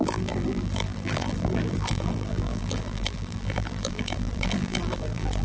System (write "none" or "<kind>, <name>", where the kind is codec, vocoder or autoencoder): vocoder, BigVGAN v2